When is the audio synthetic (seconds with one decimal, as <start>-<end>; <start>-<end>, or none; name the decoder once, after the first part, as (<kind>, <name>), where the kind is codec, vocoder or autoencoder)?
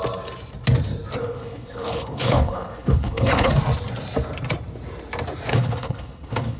1.2-3.5 (codec, HILCodec); 5.5-6.6